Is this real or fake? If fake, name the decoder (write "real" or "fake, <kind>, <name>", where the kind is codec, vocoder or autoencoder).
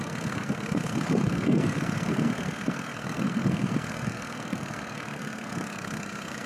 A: fake, codec, SNAC